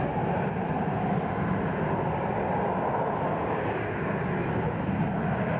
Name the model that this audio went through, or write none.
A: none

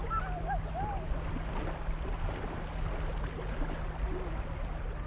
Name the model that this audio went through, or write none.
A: none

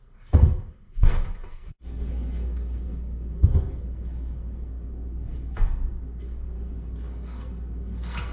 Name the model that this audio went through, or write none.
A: codec, SNAC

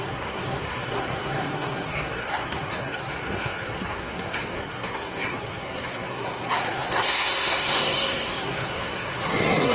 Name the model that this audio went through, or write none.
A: codec, SNAC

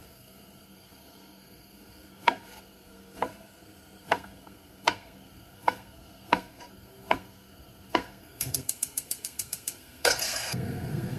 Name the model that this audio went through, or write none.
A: codec, SNAC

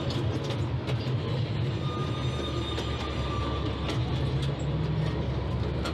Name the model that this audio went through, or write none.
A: none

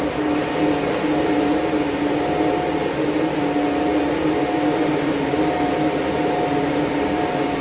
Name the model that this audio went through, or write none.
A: none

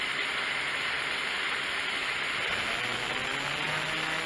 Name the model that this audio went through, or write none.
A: none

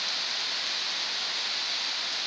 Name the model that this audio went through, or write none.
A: none